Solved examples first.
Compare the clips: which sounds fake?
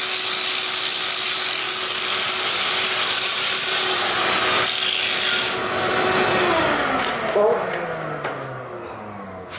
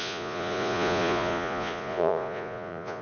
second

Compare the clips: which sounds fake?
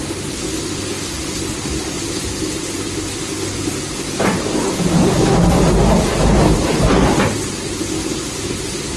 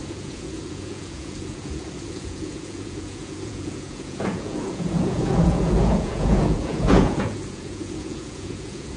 second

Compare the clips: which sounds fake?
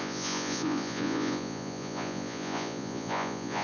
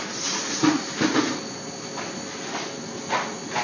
first